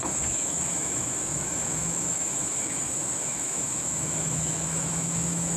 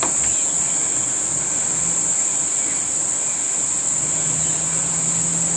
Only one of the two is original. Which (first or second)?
second